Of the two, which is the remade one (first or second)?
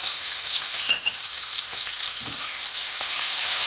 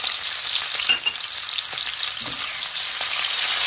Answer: first